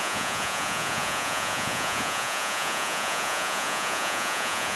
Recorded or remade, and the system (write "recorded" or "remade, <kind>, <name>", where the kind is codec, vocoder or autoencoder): remade, vocoder, Vocos